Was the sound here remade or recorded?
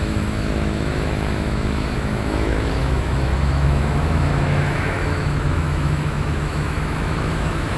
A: remade